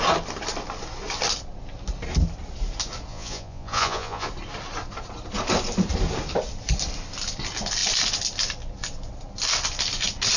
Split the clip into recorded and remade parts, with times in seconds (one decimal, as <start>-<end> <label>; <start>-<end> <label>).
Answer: 0.0-3.1 recorded; 3.1-4.3 remade; 4.3-10.4 recorded